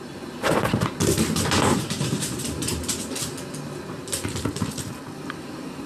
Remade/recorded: recorded